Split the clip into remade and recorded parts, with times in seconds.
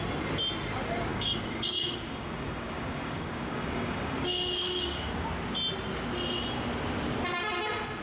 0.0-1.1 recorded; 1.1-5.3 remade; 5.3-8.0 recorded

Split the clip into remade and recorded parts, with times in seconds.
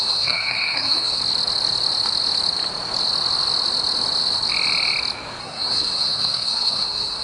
0.0-1.2 remade; 1.2-5.4 recorded; 5.4-7.2 remade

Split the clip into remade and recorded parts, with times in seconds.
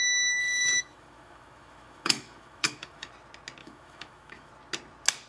0.0-0.4 recorded; 0.4-3.1 remade; 3.1-3.6 recorded; 3.6-4.5 remade; 4.5-5.3 recorded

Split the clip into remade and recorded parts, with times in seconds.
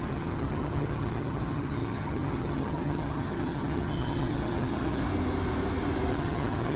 0.0-5.0 remade; 5.0-6.1 recorded; 6.1-6.8 remade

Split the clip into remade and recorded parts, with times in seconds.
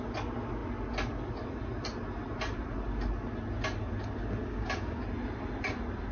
0.0-4.4 recorded; 4.4-5.0 remade; 5.0-6.1 recorded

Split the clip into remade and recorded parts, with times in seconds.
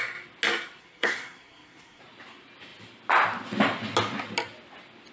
0.0-0.8 recorded; 0.8-2.0 remade; 2.0-5.1 recorded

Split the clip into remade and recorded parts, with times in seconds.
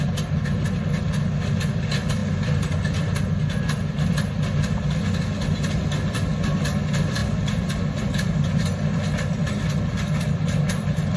0.0-11.2 recorded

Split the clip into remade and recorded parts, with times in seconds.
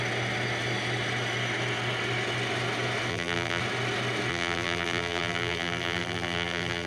0.0-3.1 recorded; 3.1-3.6 remade; 3.6-4.3 recorded; 4.3-6.9 remade